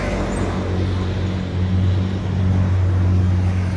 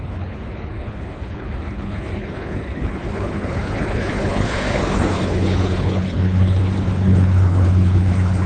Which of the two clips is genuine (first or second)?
first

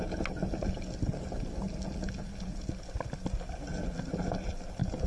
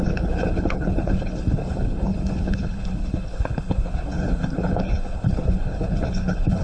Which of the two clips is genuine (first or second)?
first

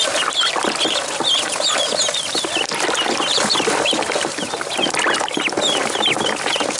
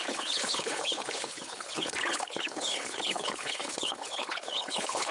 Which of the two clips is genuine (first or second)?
first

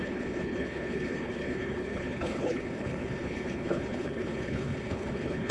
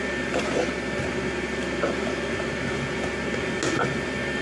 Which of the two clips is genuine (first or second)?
second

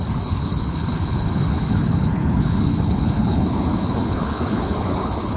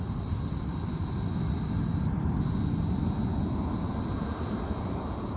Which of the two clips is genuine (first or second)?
second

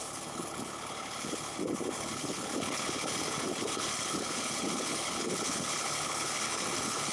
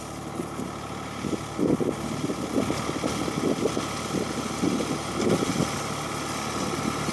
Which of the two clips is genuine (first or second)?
second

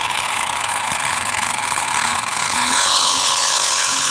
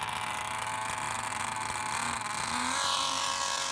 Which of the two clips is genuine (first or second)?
second